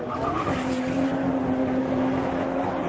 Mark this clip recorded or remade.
recorded